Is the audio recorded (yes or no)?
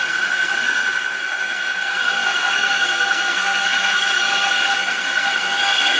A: no